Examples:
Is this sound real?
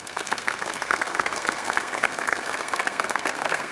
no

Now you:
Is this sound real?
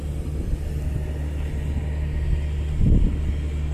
yes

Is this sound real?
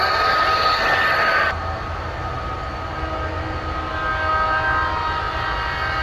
yes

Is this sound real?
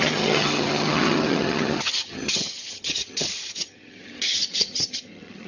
no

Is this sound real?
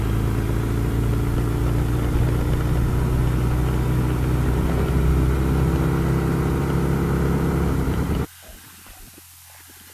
yes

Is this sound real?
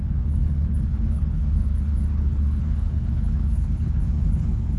no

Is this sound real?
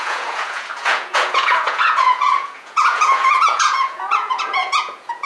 no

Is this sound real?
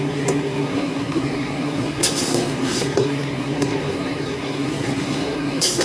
no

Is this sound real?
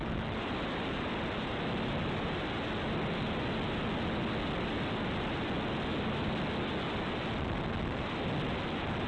yes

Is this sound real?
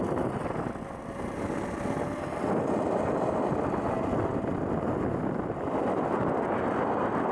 yes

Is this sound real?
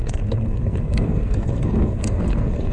no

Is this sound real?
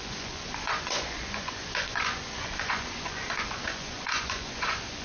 no